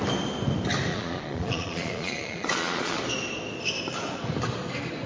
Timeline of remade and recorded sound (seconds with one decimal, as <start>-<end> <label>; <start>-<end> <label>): 0.0-0.9 recorded; 0.9-3.0 remade; 3.0-5.1 recorded